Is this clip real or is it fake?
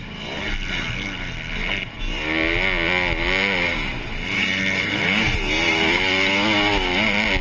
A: real